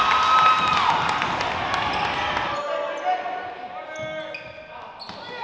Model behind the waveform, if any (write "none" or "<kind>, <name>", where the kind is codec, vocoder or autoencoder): none